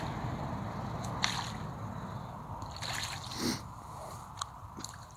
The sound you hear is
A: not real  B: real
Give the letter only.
B